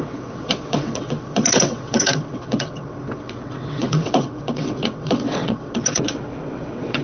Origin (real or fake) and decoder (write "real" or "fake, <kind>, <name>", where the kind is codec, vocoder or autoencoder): fake, vocoder, WaveNeXt